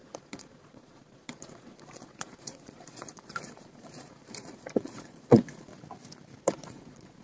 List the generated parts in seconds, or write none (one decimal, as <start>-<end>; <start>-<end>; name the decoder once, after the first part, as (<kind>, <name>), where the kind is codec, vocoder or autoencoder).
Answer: 0.0-5.7 (vocoder, Vocos); 6.4-7.2